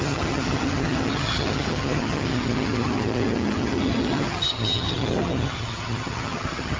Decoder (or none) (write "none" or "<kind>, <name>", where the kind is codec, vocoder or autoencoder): vocoder, HiFi-GAN